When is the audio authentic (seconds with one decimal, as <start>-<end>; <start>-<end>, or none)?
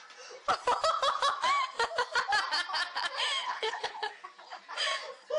0.0-3.4; 4.1-5.4